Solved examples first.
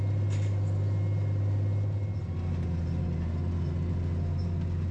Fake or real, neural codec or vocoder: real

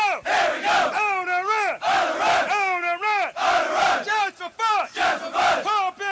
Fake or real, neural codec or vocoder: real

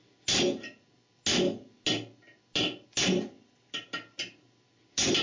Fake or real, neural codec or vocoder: real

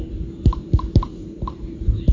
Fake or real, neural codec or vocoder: fake, vocoder, BigVGAN v2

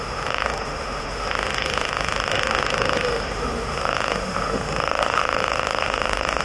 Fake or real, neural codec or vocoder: fake, autoencoder, DAC-VAE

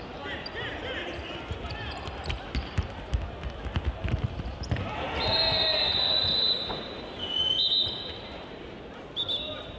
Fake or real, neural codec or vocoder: real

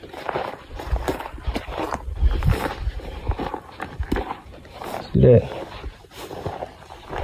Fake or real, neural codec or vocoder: fake, vocoder, BigVGAN v2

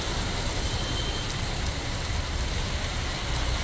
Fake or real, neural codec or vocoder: fake, vocoder, BigVGAN v2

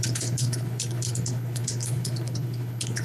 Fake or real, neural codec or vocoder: fake, codec, HILCodec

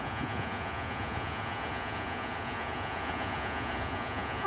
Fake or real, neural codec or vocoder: fake, vocoder, Vocos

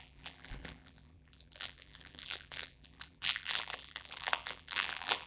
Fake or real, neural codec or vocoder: fake, vocoder, BigVGAN v2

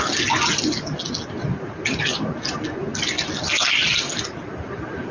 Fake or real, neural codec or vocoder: real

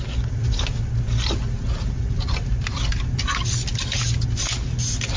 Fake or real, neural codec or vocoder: real